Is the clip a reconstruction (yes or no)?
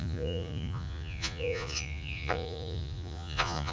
yes